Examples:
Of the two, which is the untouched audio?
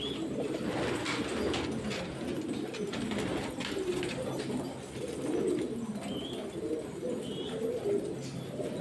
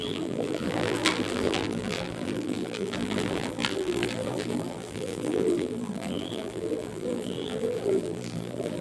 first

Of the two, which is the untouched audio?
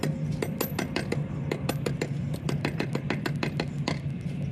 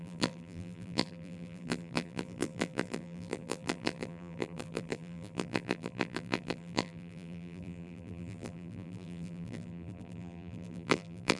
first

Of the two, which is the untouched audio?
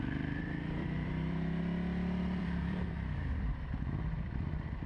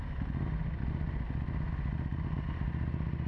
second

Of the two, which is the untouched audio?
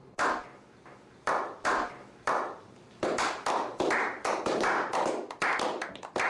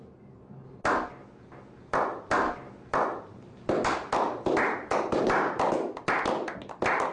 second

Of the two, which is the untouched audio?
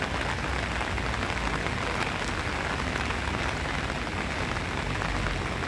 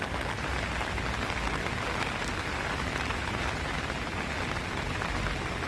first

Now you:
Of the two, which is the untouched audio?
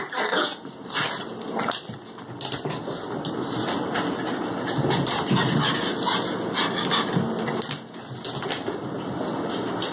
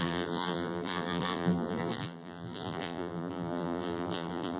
first